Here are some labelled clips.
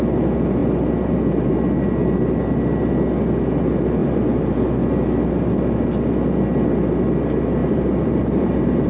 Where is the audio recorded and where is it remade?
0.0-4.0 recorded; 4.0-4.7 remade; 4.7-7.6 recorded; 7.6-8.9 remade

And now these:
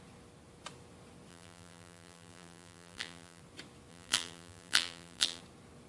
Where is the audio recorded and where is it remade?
0.0-1.3 recorded; 1.3-3.4 remade; 3.4-3.9 recorded; 3.9-5.4 remade; 5.4-5.9 recorded

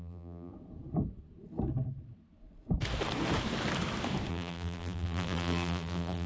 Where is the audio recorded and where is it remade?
0.0-0.5 remade; 0.5-4.3 recorded; 4.3-6.3 remade